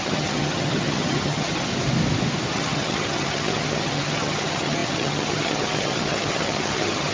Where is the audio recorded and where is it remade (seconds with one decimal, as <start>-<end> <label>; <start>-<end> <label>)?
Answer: 0.0-1.7 remade; 1.7-2.5 recorded; 2.5-7.1 remade